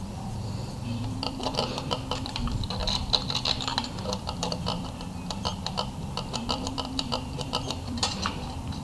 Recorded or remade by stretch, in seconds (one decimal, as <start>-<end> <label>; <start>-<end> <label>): 0.0-2.8 remade; 2.8-3.4 recorded; 3.4-8.8 remade